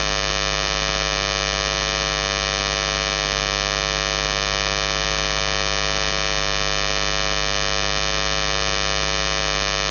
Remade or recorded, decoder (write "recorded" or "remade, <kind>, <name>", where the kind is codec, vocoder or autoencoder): recorded